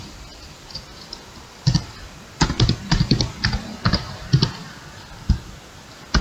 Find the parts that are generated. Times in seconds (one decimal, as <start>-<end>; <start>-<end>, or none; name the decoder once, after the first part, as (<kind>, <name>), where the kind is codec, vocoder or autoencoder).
0.0-4.6 (vocoder, BigVGAN v2)